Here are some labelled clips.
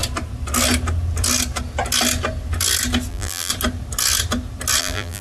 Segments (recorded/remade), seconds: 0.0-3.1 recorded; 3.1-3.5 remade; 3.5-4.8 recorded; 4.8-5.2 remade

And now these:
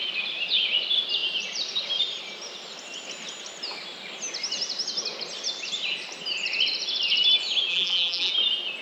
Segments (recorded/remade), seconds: 0.0-7.7 recorded; 7.7-8.3 remade; 8.3-8.8 recorded

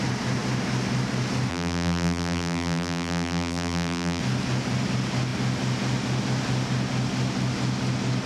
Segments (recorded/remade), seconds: 0.0-1.5 recorded; 1.5-4.2 remade; 4.2-8.3 recorded

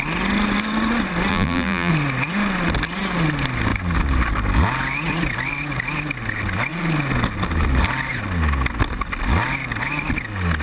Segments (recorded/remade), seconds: 0.0-1.3 recorded; 1.3-1.9 remade; 1.9-10.6 recorded

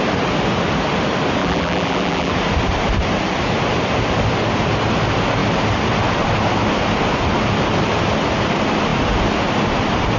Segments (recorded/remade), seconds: 0.0-1.4 recorded; 1.4-2.3 remade; 2.3-10.2 recorded

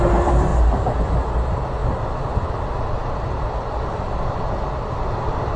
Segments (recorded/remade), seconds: 0.0-5.6 recorded

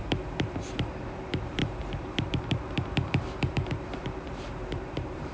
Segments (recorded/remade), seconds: 0.0-0.9 recorded; 0.9-5.3 remade

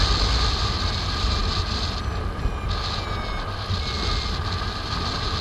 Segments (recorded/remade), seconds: 0.0-5.4 recorded